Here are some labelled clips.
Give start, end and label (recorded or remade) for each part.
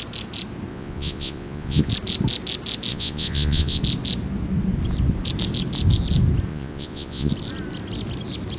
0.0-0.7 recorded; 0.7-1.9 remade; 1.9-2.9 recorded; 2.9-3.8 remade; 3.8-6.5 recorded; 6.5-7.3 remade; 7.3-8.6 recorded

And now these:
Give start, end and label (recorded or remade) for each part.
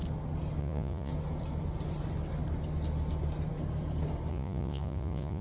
0.0-0.6 recorded; 0.6-1.1 remade; 1.1-4.3 recorded; 4.3-5.4 remade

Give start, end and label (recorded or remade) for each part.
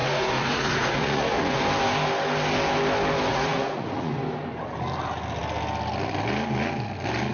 0.0-1.6 remade; 1.6-3.3 recorded; 3.3-4.1 remade; 4.1-7.3 recorded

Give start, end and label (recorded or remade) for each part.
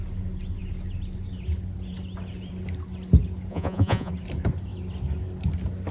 0.0-3.5 recorded; 3.5-4.1 remade; 4.1-5.9 recorded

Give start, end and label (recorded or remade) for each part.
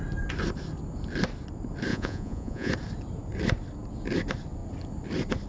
0.0-1.9 recorded; 1.9-2.7 remade; 2.7-5.5 recorded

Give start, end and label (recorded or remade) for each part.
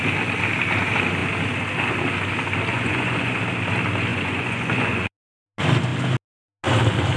0.0-2.7 recorded; 2.7-3.4 remade; 3.4-4.1 recorded; 4.1-5.1 remade; 5.1-7.2 recorded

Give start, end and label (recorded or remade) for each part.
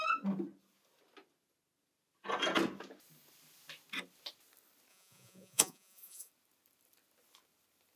0.0-4.9 recorded; 4.9-6.3 remade; 6.3-8.0 recorded